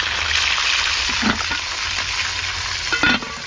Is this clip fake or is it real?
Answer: real